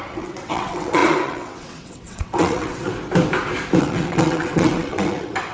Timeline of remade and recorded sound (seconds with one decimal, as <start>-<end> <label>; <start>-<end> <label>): 0.0-2.9 remade; 2.9-3.8 recorded; 3.8-5.5 remade